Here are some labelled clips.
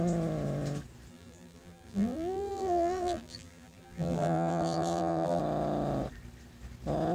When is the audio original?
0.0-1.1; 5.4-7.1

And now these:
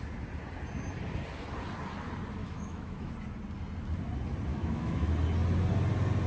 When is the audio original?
0.0-2.4; 3.1-4.5; 5.1-6.3

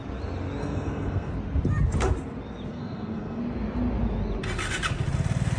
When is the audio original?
0.0-0.6; 1.3-2.7; 3.4-5.6

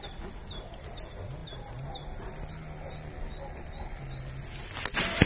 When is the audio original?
0.0-5.3

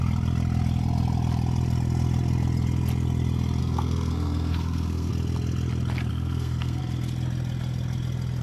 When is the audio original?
0.0-3.6; 5.1-6.1; 6.8-8.4